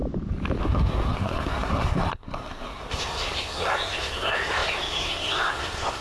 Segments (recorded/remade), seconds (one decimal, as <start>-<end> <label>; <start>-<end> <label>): 0.0-0.6 recorded; 0.6-6.0 remade